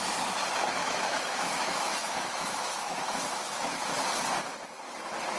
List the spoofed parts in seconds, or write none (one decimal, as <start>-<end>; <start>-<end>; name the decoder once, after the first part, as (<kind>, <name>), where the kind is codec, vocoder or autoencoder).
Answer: 0.8-4.0 (autoencoder, DAC-VAE)